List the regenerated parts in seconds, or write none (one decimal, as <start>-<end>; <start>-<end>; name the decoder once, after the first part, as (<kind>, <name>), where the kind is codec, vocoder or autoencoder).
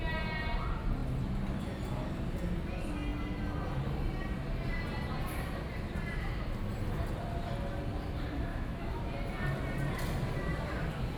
8.5-9.0 (autoencoder, DAC-VAE)